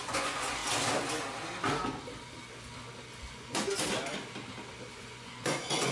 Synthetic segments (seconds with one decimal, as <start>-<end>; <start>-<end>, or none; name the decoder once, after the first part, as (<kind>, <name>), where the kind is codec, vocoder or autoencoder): 0.0-0.6 (vocoder, Vocos); 3.2-3.7; 4.9-5.9